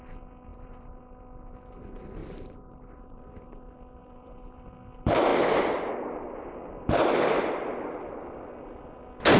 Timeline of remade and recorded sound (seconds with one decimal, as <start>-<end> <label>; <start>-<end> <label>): 0.0-0.5 recorded; 0.5-1.0 remade; 1.0-2.2 recorded; 2.2-3.6 remade; 3.6-4.0 recorded; 4.0-4.7 remade; 4.7-9.4 recorded